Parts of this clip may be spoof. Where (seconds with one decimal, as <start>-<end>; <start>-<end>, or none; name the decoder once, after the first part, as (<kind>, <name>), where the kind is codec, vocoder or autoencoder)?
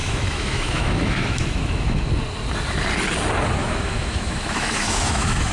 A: 0.0-2.1 (autoencoder, DAC-VAE); 3.6-5.5